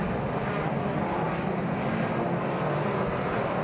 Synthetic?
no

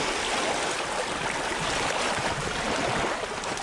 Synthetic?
no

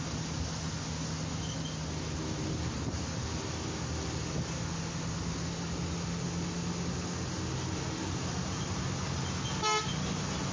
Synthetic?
no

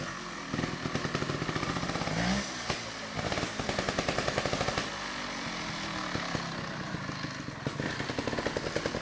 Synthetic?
no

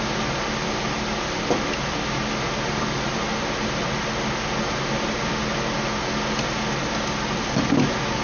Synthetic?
no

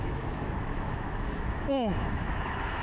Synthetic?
yes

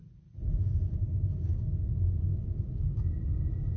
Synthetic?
no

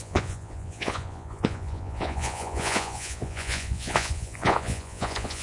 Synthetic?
yes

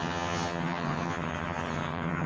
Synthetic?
yes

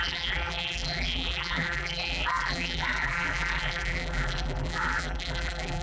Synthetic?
yes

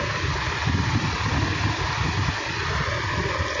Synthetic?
no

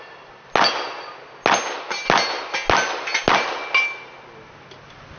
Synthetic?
no